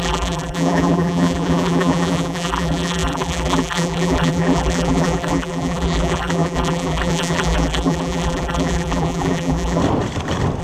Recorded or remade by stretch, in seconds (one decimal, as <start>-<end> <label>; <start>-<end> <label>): 0.0-9.8 remade; 9.8-10.6 recorded